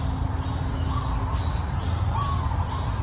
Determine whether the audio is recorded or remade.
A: recorded